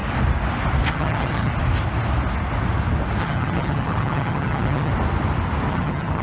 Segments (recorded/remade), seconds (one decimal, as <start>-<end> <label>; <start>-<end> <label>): 0.0-0.9 recorded; 0.9-1.5 remade; 1.5-3.2 recorded; 3.2-4.9 remade; 4.9-5.7 recorded; 5.7-6.2 remade